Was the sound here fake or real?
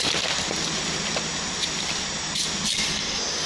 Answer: real